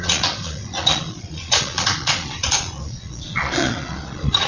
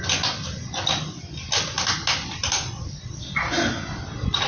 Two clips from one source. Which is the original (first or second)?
second